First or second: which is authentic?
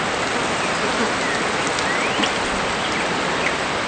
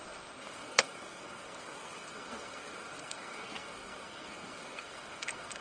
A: first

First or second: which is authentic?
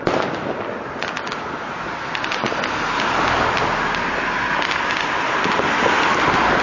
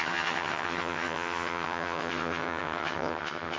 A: first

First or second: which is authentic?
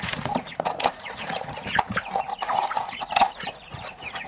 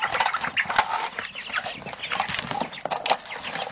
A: second